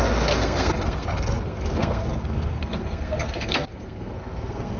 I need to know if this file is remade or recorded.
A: remade